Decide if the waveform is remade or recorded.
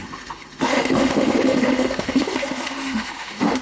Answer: remade